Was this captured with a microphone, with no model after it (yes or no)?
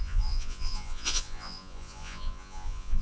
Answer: no